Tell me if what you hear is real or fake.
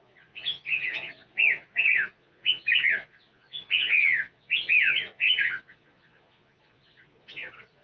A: fake